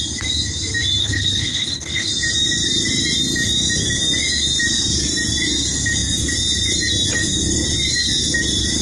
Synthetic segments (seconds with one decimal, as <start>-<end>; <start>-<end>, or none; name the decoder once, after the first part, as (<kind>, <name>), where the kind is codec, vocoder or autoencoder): 1.0-2.1 (codec, HILCodec)